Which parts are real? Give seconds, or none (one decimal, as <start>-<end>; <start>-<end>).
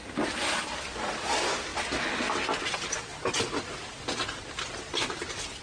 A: 0.0-5.6